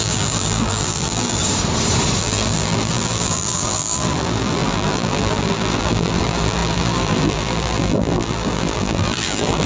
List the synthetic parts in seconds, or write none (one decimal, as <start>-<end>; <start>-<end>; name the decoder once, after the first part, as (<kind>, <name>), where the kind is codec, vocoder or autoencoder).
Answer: 0.0-1.4 (vocoder, BigVGAN v2); 2.2-9.7